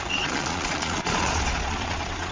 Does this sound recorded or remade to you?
remade